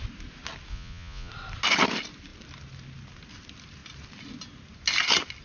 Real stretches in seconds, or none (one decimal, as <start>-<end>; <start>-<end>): 0.0-0.7; 1.3-5.4